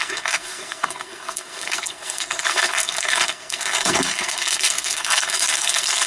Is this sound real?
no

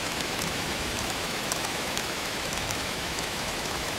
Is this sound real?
no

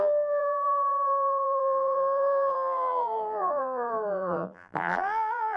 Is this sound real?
no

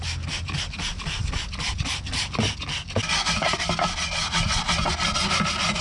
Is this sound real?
yes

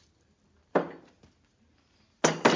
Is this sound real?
yes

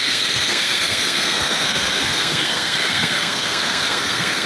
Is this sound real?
no